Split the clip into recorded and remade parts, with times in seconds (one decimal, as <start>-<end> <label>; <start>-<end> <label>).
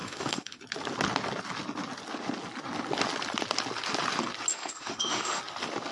0.0-0.6 remade; 0.6-4.5 recorded; 4.5-5.4 remade; 5.4-5.9 recorded